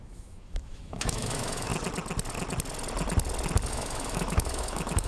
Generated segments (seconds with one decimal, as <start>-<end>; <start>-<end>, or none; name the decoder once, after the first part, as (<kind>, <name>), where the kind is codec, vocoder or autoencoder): 0.0-1.7 (autoencoder, DAC-VAE); 3.7-5.1